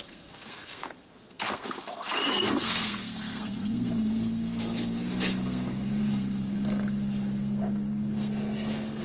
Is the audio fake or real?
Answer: fake